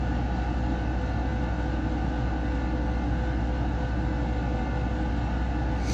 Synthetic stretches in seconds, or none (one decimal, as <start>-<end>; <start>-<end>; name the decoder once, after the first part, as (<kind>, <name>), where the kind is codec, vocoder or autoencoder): none